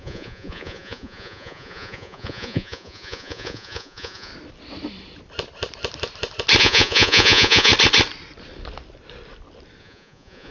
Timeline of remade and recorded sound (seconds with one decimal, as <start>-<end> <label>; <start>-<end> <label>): 0.0-4.3 remade; 4.3-6.6 recorded; 6.6-7.7 remade; 7.7-9.8 recorded; 9.8-10.5 remade